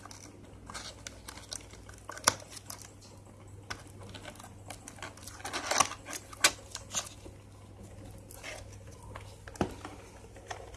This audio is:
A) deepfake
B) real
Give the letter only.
B